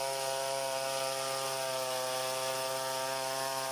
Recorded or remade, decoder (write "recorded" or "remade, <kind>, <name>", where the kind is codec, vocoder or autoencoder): recorded